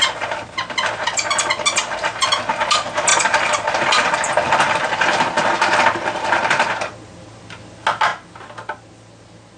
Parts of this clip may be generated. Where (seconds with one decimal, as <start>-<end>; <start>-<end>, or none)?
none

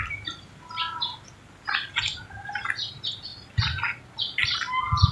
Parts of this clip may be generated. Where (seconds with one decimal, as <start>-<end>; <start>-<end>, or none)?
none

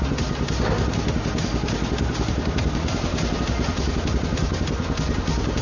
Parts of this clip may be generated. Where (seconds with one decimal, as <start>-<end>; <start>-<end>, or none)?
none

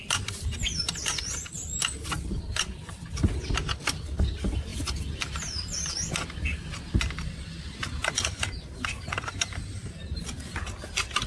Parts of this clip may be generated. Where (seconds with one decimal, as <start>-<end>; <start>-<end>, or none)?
none

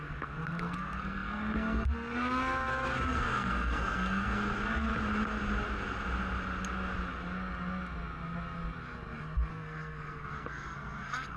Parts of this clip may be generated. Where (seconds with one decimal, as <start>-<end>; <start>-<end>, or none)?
0.0-4.9; 9.5-11.4

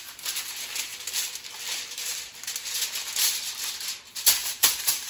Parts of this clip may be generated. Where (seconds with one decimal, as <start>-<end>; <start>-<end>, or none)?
4.4-5.1